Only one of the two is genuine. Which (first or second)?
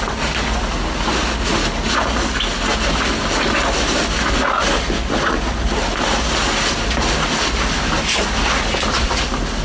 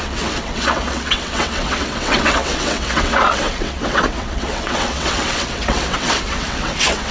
first